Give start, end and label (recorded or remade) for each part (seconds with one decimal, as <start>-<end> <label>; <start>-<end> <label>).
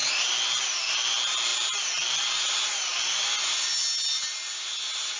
0.0-5.2 recorded